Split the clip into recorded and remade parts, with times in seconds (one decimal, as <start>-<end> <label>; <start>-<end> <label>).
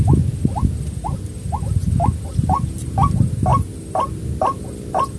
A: 0.0-5.2 recorded